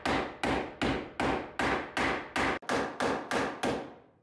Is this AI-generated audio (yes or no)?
no